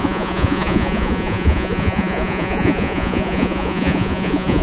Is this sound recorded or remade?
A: remade